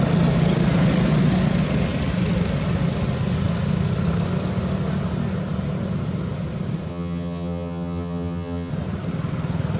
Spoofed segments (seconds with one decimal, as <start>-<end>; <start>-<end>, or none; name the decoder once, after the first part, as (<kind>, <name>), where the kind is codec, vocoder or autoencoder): 6.9-8.7 (vocoder, HiFi-GAN)